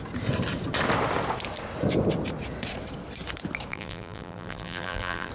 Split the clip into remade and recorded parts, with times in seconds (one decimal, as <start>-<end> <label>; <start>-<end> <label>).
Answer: 0.0-3.7 recorded; 3.7-5.3 remade